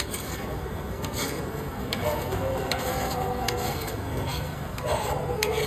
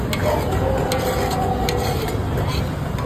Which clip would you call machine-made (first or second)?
first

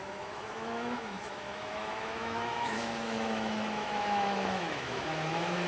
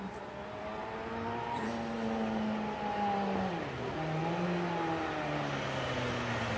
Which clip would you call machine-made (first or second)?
first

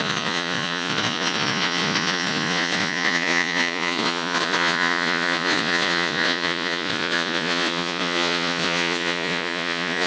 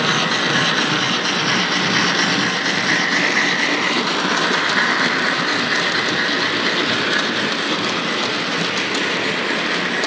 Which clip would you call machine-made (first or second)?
first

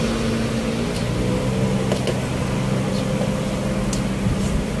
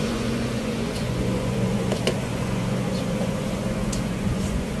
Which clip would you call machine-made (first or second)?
second